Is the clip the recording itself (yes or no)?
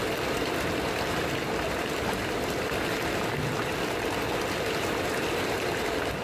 yes